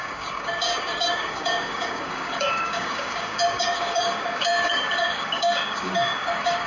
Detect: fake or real fake